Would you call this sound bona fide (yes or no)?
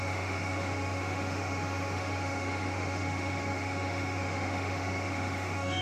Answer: no